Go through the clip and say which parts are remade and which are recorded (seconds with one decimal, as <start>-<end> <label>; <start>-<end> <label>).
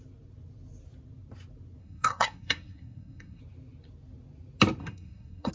0.0-1.8 recorded; 1.8-3.4 remade; 3.4-4.8 recorded; 4.8-5.5 remade